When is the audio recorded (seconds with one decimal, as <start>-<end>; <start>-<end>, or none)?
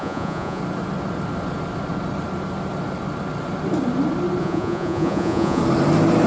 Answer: 0.6-4.4; 5.6-6.3